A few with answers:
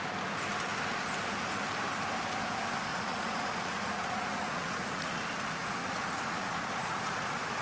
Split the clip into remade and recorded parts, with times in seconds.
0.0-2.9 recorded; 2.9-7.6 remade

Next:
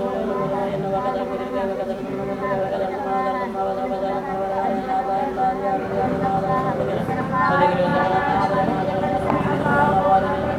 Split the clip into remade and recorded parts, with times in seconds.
0.0-0.6 recorded; 0.6-3.0 remade; 3.0-7.9 recorded; 7.9-9.6 remade; 9.6-10.6 recorded

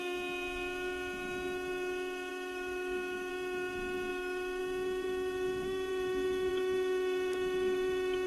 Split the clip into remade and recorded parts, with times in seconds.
0.0-2.3 recorded; 2.3-3.3 remade; 3.3-4.1 recorded; 4.1-4.6 remade; 4.6-8.3 recorded

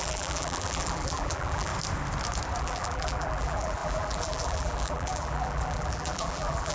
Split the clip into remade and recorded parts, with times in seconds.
0.0-1.7 remade; 1.7-2.6 recorded; 2.6-6.7 remade

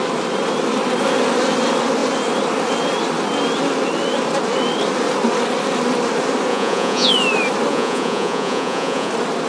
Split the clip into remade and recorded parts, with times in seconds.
0.0-6.5 recorded; 6.5-7.1 remade; 7.1-7.7 recorded; 7.7-9.1 remade; 9.1-9.5 recorded

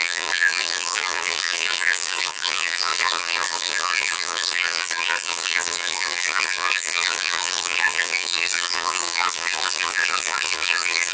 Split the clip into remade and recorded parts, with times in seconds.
0.0-11.1 remade